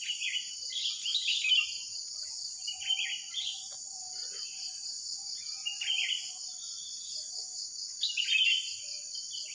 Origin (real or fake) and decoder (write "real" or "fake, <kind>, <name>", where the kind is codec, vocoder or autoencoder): real